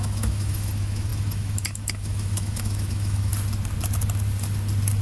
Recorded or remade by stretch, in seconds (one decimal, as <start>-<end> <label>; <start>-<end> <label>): 0.0-3.3 remade; 3.3-5.0 recorded